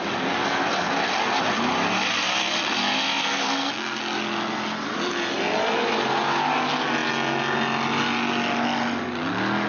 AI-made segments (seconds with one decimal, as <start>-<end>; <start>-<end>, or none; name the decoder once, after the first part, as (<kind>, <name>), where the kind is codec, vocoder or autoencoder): 3.2-4.0 (codec, SNAC)